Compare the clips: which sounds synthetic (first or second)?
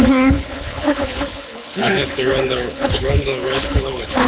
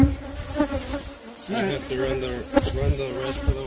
first